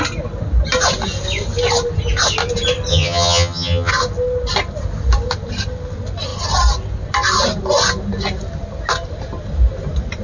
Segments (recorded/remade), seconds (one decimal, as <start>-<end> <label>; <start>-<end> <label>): 0.0-2.9 recorded; 2.9-3.9 remade; 3.9-10.2 recorded

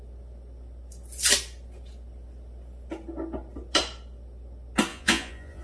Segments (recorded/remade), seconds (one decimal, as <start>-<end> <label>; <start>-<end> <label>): 0.0-4.9 recorded; 4.9-5.6 remade